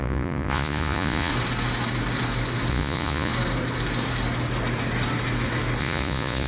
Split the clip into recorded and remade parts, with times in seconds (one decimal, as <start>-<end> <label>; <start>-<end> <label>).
0.0-1.3 remade; 1.3-2.7 recorded; 2.7-3.3 remade; 3.3-5.8 recorded; 5.8-6.5 remade